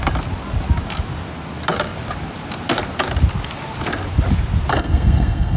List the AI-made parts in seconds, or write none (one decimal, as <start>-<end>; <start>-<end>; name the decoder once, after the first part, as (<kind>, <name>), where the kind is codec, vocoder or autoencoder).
4.7-5.6 (codec, SNAC)

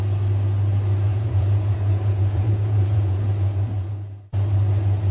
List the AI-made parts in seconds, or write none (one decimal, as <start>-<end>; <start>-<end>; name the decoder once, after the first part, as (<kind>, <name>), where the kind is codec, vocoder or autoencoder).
1.1-3.9 (vocoder, Vocos)

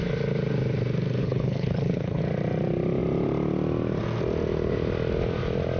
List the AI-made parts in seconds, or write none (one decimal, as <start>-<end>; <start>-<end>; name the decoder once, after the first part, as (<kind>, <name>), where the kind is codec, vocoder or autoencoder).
1.2-2.2 (codec, HILCodec)

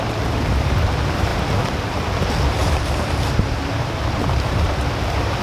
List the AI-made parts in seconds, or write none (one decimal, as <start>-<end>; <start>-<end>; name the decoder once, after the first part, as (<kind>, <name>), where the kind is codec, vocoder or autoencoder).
1.3-2.1 (vocoder, BigVGAN v2); 2.6-4.8

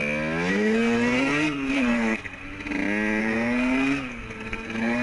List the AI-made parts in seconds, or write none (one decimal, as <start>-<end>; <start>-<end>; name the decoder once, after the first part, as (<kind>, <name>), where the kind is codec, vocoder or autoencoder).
0.5-2.4 (codec, SNAC); 3.2-5.0

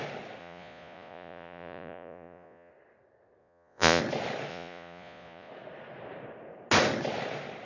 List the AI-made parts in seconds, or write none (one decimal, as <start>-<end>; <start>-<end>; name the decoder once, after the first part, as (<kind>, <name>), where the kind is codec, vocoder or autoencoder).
0.4-2.7 (vocoder, Vocos); 3.4-4.0; 4.5-5.5